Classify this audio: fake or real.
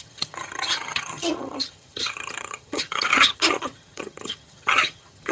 fake